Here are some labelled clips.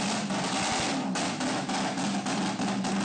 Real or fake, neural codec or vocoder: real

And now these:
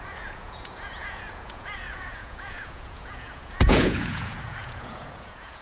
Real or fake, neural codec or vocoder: fake, vocoder, Vocos